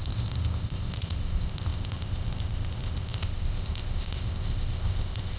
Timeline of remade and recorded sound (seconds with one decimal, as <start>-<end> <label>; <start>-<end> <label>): 0.0-5.4 remade